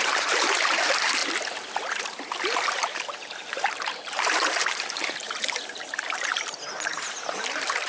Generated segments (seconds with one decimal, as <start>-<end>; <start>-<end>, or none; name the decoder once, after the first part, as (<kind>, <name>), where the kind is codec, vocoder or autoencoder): 0.0-1.2 (vocoder, BigVGAN v2); 2.0-7.9